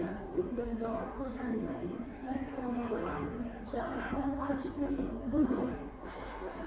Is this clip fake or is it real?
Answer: fake